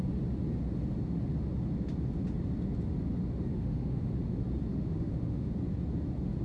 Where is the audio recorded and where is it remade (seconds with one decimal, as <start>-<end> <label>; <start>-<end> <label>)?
0.0-3.5 recorded; 3.5-4.1 remade; 4.1-4.7 recorded; 4.7-5.5 remade; 5.5-6.4 recorded

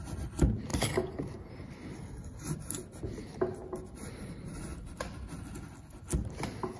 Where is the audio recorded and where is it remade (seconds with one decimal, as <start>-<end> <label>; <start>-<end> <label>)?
0.0-6.8 recorded

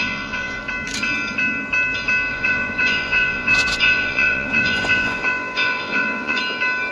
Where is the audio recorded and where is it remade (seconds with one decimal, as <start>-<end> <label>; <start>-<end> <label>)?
0.0-0.6 remade; 0.6-2.3 recorded; 2.3-6.4 remade; 6.4-6.9 recorded

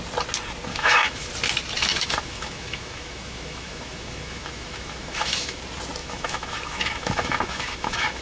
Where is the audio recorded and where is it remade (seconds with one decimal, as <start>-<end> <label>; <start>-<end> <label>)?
0.0-0.7 recorded; 0.7-1.3 remade; 1.3-1.9 recorded; 1.9-5.6 remade; 5.6-6.0 recorded; 6.0-8.2 remade

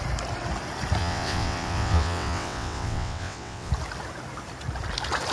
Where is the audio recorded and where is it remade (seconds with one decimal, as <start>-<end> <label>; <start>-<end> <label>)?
0.0-1.0 recorded; 1.0-3.7 remade; 3.7-5.3 recorded

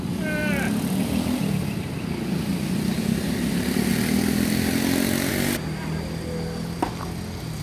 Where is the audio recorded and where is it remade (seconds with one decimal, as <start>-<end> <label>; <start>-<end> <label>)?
0.0-7.6 recorded

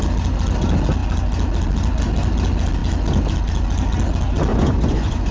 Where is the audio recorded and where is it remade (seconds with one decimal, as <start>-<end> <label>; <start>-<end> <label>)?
0.0-4.5 recorded; 4.5-5.3 remade

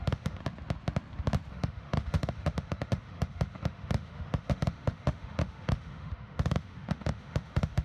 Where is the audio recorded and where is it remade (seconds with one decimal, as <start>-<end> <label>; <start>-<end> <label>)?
0.0-0.4 remade; 0.4-1.5 recorded; 1.5-7.8 remade